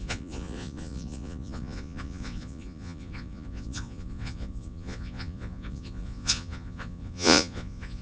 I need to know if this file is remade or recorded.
remade